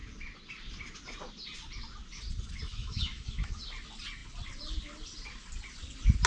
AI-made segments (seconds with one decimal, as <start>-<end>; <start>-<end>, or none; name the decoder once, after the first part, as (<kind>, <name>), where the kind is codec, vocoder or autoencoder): 2.7-3.6 (autoencoder, DAC-VAE)